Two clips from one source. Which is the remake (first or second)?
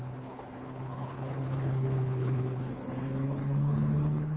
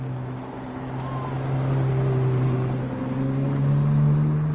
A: first